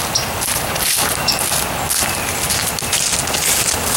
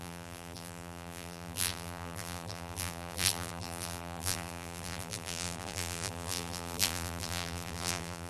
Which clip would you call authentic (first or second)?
first